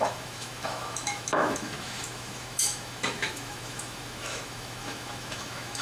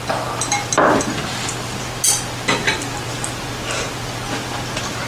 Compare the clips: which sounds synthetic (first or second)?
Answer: first